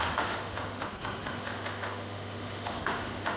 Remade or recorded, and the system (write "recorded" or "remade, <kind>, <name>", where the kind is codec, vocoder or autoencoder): remade, autoencoder, DAC-VAE